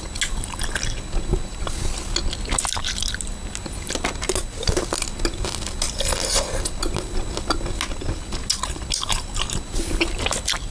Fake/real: real